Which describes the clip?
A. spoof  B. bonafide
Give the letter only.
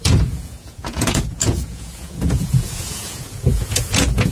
A